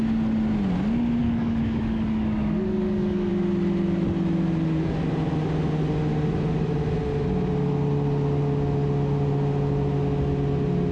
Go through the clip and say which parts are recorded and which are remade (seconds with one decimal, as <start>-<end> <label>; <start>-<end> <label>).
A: 0.0-1.2 recorded; 1.2-3.3 remade; 3.3-10.9 recorded